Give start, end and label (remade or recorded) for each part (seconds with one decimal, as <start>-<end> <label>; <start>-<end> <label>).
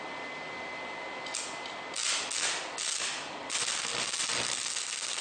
0.0-5.2 recorded